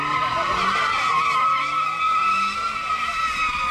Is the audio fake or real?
real